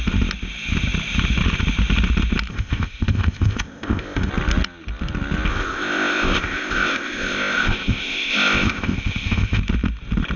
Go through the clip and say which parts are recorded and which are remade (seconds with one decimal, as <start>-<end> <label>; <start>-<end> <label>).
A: 0.0-2.5 recorded; 2.5-4.3 remade; 4.3-5.5 recorded; 5.5-9.6 remade; 9.6-10.4 recorded